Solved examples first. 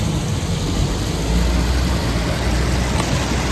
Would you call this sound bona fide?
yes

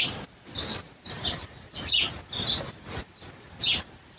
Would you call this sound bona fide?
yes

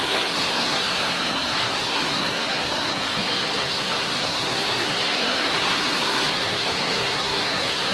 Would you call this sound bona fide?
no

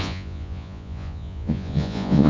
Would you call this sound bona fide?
no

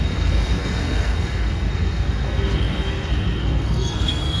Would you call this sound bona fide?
no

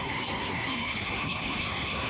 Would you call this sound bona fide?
no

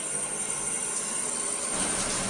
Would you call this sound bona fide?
yes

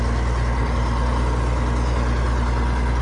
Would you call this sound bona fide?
yes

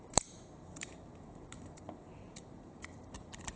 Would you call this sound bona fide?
no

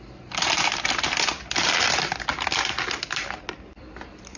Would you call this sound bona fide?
yes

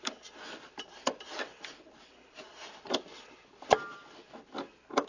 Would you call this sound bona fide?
no